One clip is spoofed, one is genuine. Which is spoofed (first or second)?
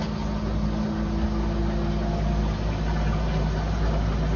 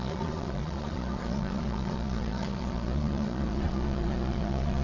second